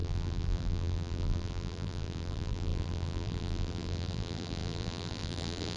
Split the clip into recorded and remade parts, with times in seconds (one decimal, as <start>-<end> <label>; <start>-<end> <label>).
0.0-5.8 remade